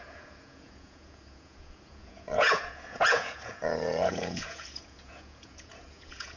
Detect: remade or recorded remade